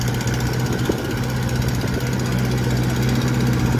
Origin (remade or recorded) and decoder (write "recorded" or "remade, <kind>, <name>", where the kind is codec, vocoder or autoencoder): recorded